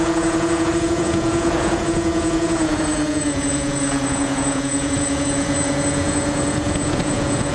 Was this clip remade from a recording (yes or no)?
yes